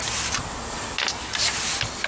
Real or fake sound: real